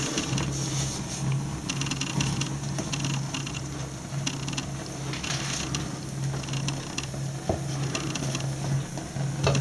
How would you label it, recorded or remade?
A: recorded